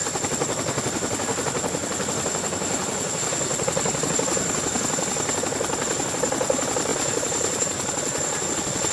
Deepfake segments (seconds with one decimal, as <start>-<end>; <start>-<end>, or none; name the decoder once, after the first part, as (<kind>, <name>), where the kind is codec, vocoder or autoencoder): none